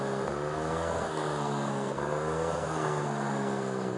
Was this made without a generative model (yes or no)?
no